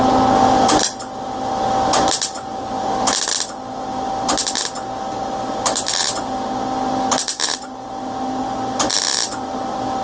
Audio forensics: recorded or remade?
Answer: recorded